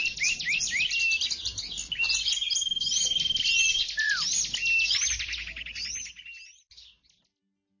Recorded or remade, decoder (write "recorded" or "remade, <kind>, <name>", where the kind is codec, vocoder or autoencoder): remade, vocoder, BigVGAN v2